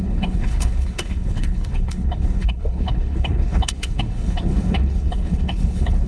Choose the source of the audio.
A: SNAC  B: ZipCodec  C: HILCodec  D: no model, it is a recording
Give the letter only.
C